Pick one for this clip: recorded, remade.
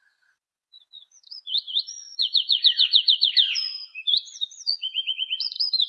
remade